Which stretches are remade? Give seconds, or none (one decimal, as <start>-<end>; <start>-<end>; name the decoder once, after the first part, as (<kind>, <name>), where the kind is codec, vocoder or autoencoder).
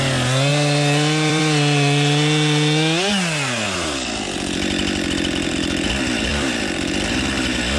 0.5-1.4 (vocoder, BigVGAN v2); 6.3-6.9